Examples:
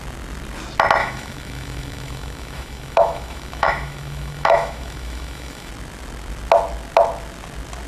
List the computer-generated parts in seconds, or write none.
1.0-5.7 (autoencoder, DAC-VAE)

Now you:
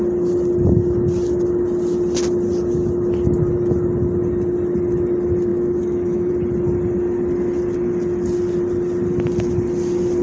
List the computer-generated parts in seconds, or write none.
5.5-6.3 (autoencoder, DAC-VAE)

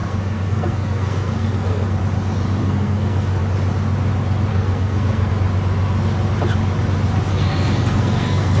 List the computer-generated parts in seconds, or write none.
0.0-2.0 (codec, SNAC); 2.6-3.4; 4.5-5.3; 7.3-8.6